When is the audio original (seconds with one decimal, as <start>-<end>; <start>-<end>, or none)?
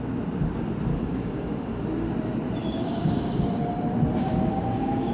0.0-0.9; 1.8-2.6; 3.6-4.2